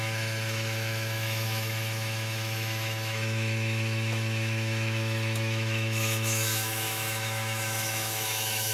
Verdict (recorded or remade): remade